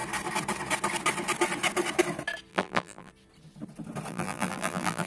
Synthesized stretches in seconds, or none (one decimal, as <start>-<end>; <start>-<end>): 2.5-3.1; 4.1-5.1